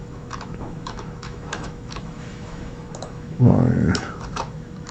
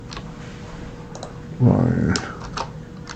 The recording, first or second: second